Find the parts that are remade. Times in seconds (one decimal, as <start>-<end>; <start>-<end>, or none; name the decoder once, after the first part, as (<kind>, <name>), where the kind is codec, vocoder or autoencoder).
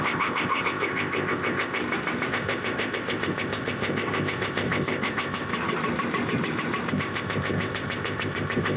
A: 0.0-1.8 (codec, ZipCodec); 2.3-5.5; 6.9-8.8